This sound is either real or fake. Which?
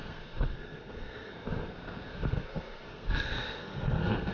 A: fake